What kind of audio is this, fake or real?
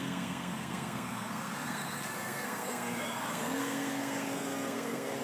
fake